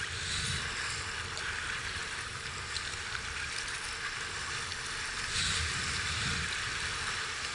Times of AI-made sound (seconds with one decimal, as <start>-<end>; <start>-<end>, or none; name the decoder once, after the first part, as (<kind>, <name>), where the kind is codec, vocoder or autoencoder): none